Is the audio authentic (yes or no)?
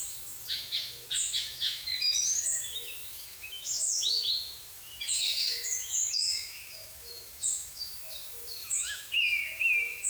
no